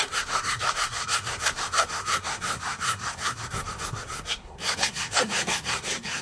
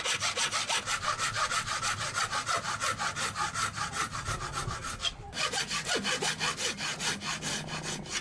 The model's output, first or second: first